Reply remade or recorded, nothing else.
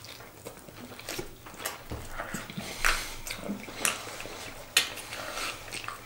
recorded